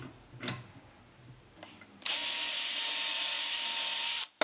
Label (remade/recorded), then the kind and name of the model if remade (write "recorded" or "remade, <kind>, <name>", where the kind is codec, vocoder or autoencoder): recorded